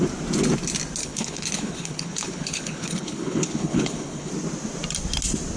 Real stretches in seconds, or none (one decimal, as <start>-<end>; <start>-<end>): 0.0-1.0; 4.3-5.6